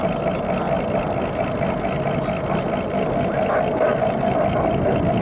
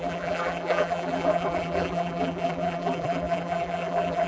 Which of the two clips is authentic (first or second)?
first